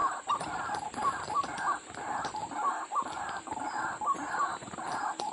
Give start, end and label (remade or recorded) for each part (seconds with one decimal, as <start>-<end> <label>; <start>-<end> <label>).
0.0-5.3 recorded